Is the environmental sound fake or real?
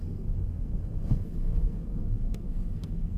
fake